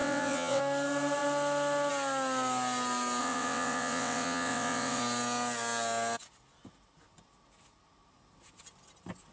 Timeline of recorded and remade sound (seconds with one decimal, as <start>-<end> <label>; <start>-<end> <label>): 0.0-0.6 remade; 0.6-3.2 recorded; 3.2-5.0 remade; 5.0-9.3 recorded